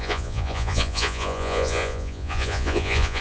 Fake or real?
fake